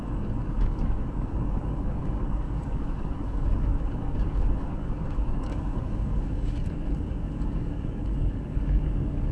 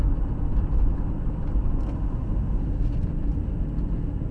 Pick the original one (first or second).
second